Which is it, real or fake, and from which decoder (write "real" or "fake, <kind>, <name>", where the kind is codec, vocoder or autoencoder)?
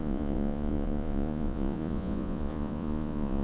fake, vocoder, Vocos